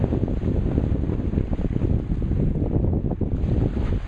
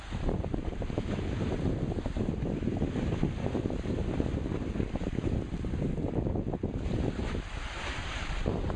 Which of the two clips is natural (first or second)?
first